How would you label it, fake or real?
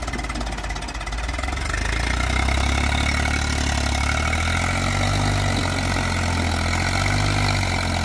real